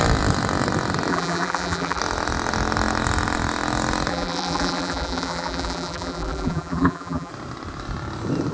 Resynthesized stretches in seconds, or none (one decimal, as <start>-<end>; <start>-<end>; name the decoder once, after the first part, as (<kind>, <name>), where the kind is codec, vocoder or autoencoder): 1.1-2.0 (vocoder, BigVGAN v2); 4.1-7.3